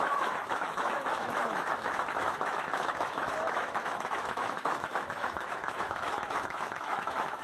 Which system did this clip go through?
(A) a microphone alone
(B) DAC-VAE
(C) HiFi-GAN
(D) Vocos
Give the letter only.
B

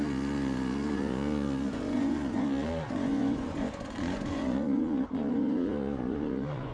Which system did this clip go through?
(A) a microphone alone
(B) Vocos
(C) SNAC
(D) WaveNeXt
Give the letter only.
B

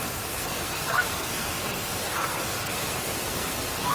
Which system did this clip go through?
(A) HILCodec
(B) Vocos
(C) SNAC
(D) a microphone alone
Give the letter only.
C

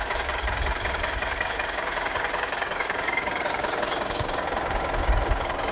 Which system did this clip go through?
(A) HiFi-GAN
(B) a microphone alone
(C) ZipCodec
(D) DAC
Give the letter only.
D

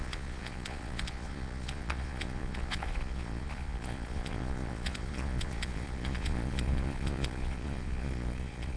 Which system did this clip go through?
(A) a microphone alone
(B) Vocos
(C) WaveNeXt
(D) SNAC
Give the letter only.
B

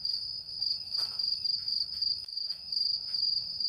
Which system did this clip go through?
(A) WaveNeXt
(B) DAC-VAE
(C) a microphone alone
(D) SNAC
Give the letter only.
B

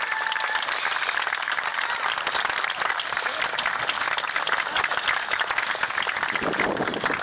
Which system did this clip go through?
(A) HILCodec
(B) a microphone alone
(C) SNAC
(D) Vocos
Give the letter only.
B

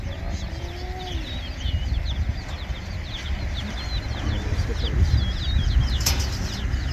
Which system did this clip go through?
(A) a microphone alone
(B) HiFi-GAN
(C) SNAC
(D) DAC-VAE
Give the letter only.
A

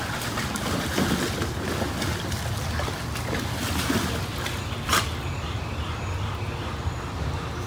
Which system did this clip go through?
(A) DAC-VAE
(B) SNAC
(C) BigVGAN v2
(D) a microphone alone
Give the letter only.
D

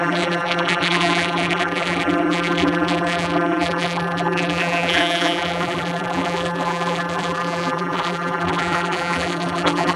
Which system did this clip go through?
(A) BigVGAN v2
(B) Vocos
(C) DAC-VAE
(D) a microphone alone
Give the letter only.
A